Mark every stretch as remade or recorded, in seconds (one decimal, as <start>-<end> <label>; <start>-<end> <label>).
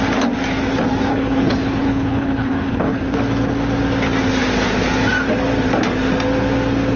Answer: 0.0-1.1 recorded; 1.1-3.0 remade; 3.0-7.0 recorded